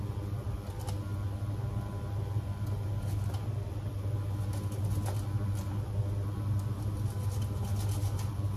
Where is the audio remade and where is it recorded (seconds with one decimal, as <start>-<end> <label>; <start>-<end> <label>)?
0.0-8.6 recorded